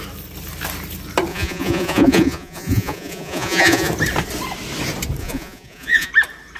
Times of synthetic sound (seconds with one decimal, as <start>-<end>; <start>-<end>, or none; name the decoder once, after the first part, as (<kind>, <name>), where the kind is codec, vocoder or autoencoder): 1.3-3.9 (vocoder, Vocos); 5.2-6.1